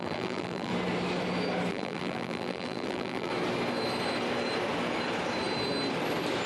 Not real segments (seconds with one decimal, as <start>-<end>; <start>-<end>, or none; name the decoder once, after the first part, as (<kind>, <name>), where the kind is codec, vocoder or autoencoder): 0.0-0.7 (vocoder, BigVGAN v2); 1.7-3.3